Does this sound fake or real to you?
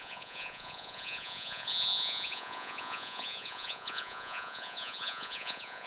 fake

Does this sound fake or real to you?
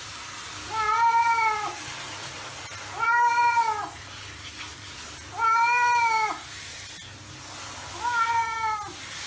real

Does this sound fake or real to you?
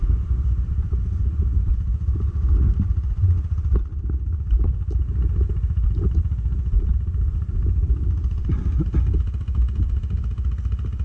real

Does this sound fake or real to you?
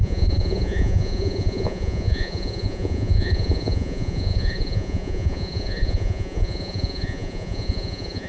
fake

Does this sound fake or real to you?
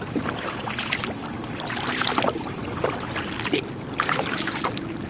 real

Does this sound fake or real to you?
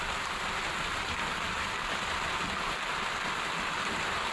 real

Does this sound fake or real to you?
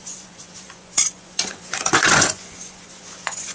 fake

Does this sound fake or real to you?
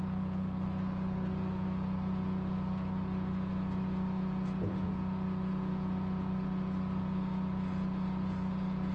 fake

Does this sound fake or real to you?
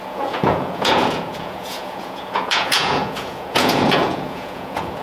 fake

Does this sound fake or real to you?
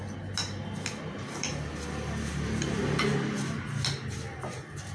real